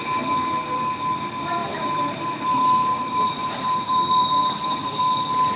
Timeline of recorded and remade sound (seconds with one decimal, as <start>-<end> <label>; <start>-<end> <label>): 0.0-1.6 recorded; 1.6-5.0 remade; 5.0-5.6 recorded